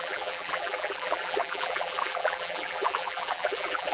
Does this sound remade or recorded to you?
remade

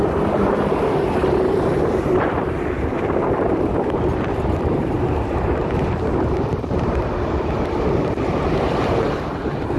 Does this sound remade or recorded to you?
remade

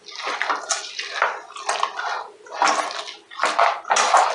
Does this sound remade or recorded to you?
recorded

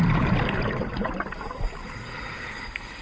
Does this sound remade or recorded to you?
remade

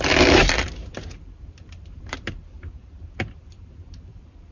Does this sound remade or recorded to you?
remade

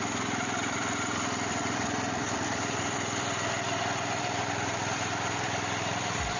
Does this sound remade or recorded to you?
remade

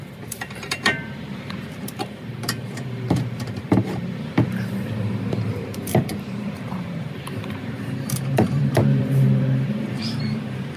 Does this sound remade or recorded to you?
remade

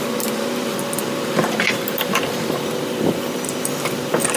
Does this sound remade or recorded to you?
remade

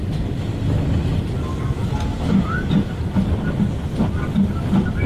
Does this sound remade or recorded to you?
recorded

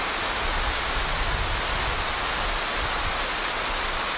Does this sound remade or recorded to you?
recorded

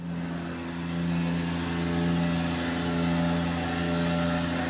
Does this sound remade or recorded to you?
recorded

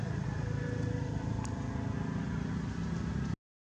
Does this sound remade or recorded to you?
recorded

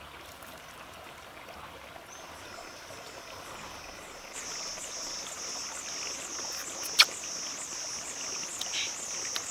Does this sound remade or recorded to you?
recorded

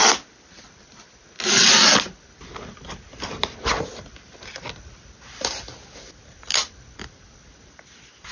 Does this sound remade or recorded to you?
recorded